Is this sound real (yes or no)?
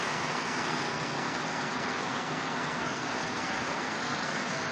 no